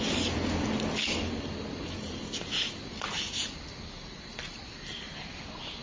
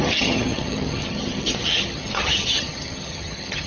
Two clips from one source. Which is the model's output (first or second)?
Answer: second